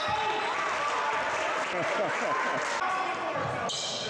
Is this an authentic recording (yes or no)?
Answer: yes